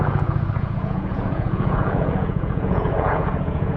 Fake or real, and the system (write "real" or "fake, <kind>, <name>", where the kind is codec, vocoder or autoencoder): fake, vocoder, Vocos